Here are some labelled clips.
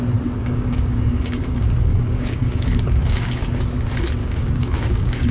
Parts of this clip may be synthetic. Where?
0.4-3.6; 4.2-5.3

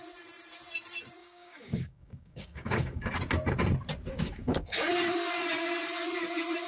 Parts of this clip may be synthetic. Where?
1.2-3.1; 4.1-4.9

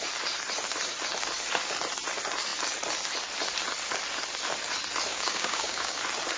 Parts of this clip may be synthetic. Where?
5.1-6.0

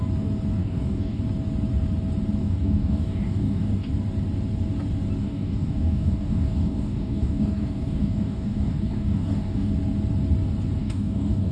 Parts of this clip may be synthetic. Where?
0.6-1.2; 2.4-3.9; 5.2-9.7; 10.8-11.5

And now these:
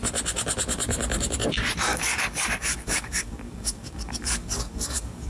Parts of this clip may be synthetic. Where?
1.9-5.3